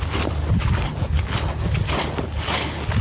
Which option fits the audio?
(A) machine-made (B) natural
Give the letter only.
B